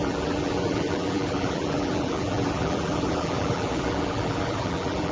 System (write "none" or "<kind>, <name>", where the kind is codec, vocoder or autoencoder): vocoder, BigVGAN v2